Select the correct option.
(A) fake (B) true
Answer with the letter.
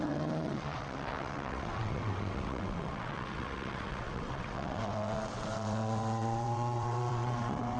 A